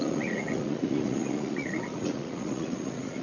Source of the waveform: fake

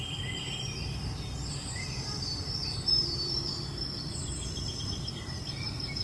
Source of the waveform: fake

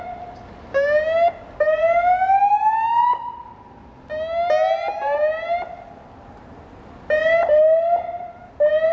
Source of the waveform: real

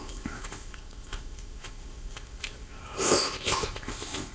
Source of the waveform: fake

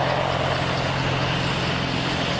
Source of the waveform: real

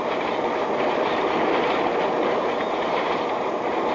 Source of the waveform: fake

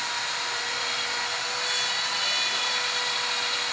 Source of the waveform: real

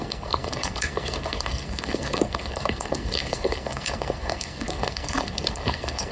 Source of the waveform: fake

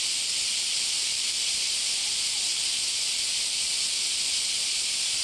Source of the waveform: fake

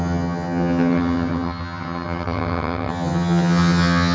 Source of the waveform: fake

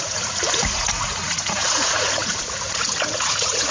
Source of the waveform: fake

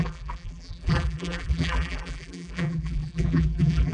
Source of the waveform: fake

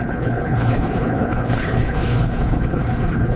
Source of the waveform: fake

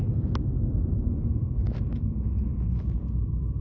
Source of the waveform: real